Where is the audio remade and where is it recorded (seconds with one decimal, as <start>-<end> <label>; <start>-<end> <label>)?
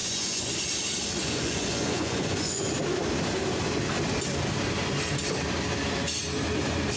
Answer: 0.0-0.6 remade; 0.6-1.2 recorded; 1.2-2.7 remade; 2.7-7.0 recorded